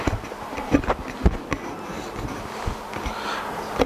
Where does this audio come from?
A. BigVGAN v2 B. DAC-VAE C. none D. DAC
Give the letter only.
C